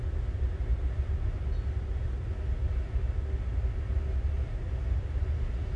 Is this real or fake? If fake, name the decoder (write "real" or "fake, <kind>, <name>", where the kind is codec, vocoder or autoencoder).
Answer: real